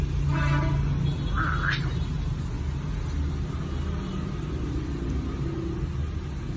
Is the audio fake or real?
real